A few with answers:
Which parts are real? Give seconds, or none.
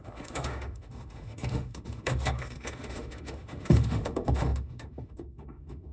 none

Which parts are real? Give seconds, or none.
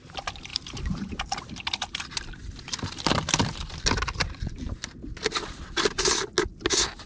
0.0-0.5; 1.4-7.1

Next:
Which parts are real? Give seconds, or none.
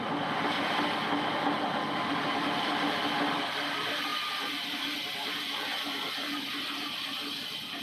0.0-7.8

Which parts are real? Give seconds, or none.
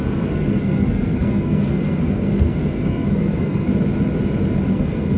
3.7-4.7